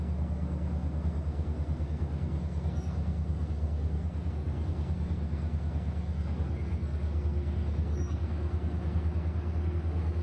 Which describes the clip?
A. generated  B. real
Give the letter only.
A